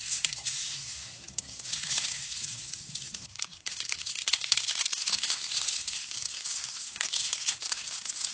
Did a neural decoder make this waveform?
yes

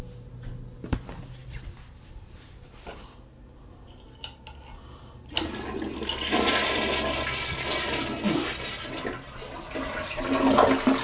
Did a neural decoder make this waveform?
no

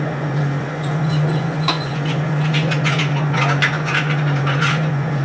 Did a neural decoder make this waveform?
yes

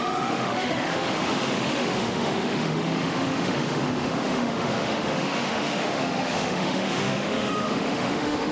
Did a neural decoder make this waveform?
yes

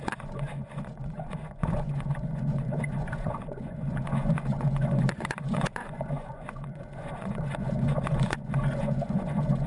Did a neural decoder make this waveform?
yes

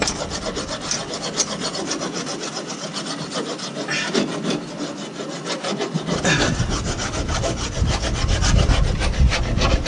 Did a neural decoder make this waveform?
no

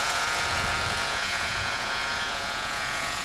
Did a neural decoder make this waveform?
yes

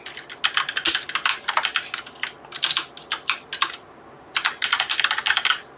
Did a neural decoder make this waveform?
no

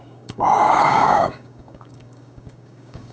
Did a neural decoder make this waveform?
yes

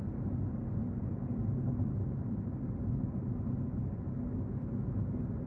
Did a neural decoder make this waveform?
no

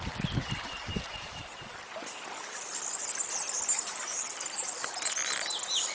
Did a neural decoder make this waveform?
no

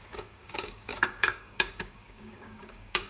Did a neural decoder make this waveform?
yes